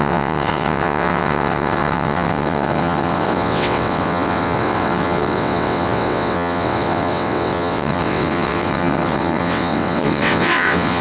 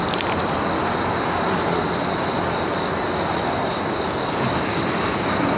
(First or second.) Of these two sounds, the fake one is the first